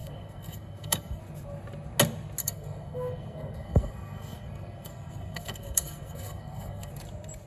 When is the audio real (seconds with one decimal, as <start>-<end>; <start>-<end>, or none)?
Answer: 1.2-2.4; 6.9-7.5